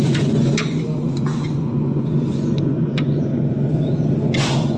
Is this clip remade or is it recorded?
remade